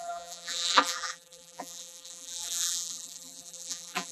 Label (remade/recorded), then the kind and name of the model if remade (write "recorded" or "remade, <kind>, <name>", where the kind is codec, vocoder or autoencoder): remade, vocoder, BigVGAN v2